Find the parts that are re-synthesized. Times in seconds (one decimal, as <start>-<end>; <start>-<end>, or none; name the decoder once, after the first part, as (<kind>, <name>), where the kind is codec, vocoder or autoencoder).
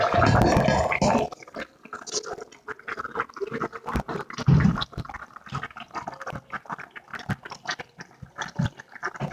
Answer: none